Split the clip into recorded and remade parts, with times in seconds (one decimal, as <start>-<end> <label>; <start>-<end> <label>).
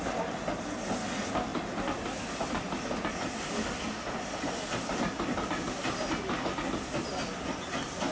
0.0-8.1 recorded